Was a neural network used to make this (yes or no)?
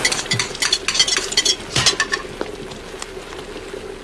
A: no